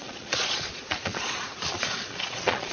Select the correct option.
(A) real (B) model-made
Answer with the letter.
B